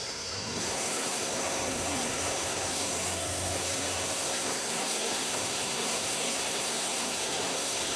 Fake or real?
fake